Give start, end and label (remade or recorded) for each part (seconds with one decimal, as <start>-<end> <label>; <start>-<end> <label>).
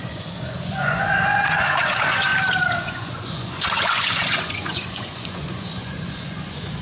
0.0-2.3 remade; 2.3-2.8 recorded; 2.8-6.8 remade